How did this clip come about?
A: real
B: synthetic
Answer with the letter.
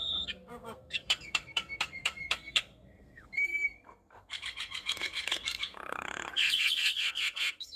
B